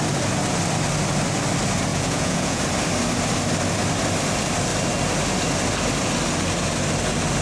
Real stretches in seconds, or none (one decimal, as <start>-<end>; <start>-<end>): 0.0-1.9; 2.6-7.4

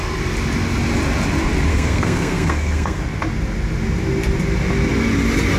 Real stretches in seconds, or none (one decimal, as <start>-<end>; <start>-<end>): 0.0-1.7; 3.0-5.6

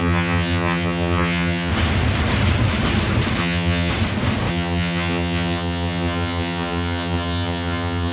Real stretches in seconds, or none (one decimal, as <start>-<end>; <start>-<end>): 1.7-3.4; 3.9-4.5

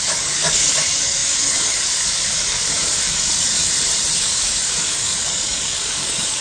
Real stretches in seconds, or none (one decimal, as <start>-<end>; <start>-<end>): 3.6-4.2

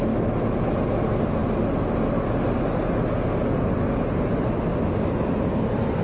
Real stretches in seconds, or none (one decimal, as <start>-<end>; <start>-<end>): 0.0-6.0